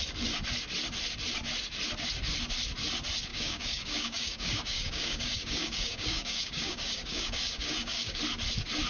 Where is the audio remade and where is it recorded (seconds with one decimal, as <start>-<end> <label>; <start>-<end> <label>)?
0.0-3.3 recorded; 3.3-8.2 remade; 8.2-8.9 recorded